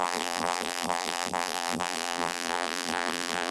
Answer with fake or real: fake